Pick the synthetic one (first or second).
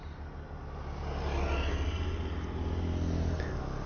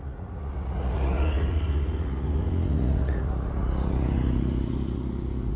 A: second